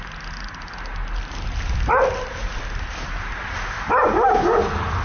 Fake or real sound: real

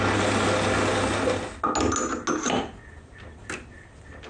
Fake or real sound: real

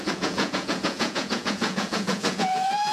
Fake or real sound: fake